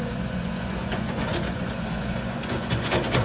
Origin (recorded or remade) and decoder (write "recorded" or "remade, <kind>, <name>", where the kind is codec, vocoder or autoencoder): remade, vocoder, Vocos